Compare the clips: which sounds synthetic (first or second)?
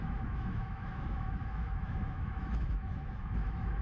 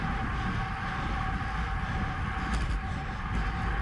first